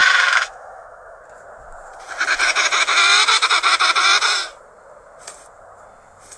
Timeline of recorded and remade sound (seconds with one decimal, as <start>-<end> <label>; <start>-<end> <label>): 0.0-1.2 remade; 1.2-6.4 recorded